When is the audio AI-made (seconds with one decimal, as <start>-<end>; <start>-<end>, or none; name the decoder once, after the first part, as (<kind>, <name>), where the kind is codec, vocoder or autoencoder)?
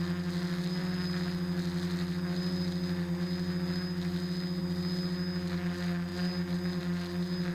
none